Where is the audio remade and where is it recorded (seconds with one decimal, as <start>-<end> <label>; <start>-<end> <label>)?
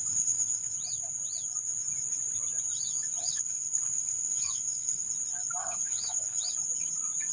0.0-0.7 remade; 0.7-3.2 recorded; 3.2-5.1 remade; 5.1-5.6 recorded; 5.6-6.5 remade; 6.5-7.3 recorded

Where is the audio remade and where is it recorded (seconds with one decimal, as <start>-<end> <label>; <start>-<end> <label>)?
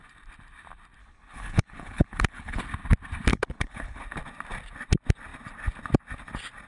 0.0-1.0 recorded; 1.0-2.6 remade; 2.6-3.3 recorded; 3.3-4.0 remade; 4.0-6.7 recorded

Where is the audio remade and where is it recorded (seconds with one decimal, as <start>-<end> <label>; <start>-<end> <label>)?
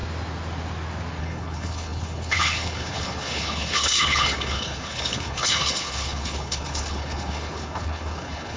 0.0-1.2 recorded; 1.2-8.6 remade